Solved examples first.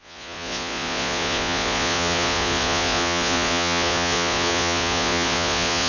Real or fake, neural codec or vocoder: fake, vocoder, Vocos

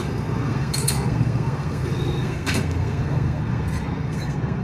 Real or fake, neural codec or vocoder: fake, codec, SNAC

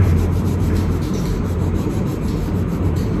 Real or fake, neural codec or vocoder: fake, vocoder, BigVGAN v2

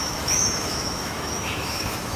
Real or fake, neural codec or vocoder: fake, autoencoder, DAC-VAE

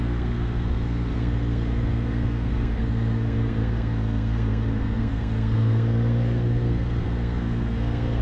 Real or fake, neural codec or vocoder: fake, codec, SNAC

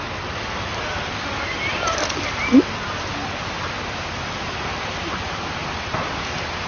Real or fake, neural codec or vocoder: real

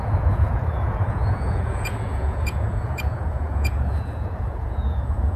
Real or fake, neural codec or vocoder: fake, vocoder, Vocos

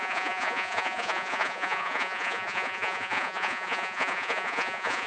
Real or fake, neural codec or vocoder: fake, vocoder, Vocos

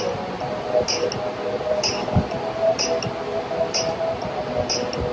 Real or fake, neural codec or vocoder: real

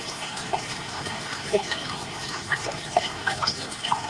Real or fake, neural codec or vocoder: fake, codec, SNAC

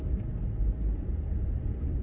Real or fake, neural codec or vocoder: fake, vocoder, BigVGAN v2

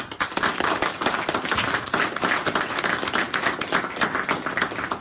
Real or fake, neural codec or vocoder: real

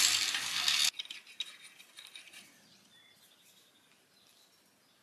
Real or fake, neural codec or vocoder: real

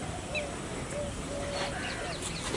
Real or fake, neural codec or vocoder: real